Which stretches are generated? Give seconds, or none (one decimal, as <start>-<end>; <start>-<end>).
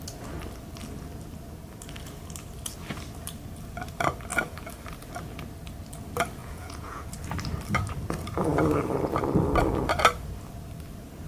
6.4-7.1